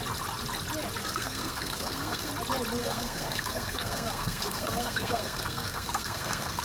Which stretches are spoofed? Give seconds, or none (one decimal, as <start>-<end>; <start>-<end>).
1.0-2.3; 2.8-6.6